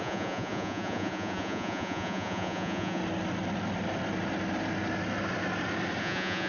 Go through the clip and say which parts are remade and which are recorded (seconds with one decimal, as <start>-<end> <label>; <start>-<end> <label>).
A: 0.0-3.0 remade; 3.0-6.0 recorded; 6.0-6.5 remade